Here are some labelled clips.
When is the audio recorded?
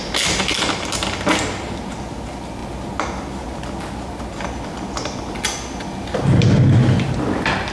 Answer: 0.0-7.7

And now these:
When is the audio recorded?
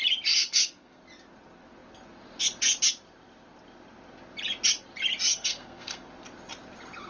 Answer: 0.0-0.4; 1.0-5.3; 6.1-7.1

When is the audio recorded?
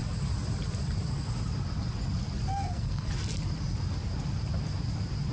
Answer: 0.0-2.5; 3.1-5.3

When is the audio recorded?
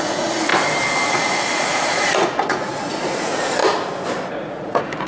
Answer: 0.5-1.1; 3.6-4.3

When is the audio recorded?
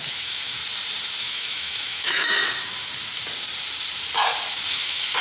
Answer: 0.6-1.2; 2.4-4.7